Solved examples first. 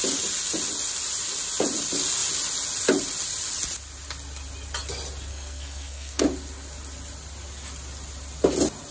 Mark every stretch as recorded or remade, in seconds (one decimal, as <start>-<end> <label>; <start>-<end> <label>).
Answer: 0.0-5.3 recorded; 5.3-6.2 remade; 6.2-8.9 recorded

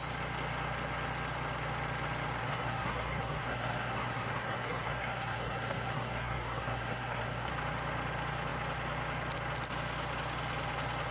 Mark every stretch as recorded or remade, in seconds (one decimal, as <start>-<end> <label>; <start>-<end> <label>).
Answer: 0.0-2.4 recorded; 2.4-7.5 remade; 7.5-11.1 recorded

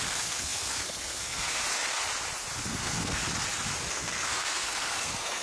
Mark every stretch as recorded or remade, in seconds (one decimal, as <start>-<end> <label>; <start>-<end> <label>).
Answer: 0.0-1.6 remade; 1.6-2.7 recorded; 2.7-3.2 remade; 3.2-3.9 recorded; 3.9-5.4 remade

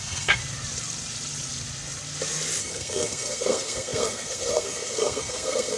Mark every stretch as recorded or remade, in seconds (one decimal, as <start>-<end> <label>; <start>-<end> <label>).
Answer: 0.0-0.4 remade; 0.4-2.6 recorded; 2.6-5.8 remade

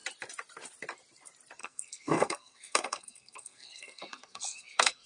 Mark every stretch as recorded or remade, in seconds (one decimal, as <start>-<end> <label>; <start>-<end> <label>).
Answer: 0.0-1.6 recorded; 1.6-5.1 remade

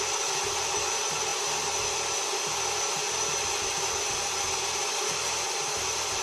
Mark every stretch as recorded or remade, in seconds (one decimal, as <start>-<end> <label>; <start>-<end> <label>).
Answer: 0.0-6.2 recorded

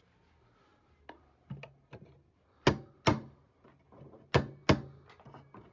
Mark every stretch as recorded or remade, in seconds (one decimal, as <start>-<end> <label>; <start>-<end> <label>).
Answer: 0.0-5.7 recorded